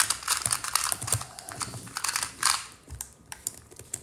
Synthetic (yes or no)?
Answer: yes